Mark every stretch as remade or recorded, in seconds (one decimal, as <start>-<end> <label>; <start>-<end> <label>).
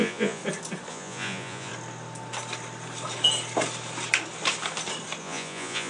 0.0-0.4 remade; 0.4-0.9 recorded; 0.9-1.7 remade; 1.7-5.2 recorded; 5.2-5.9 remade